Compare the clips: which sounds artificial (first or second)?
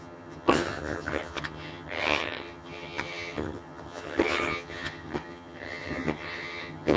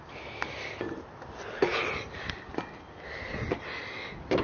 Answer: first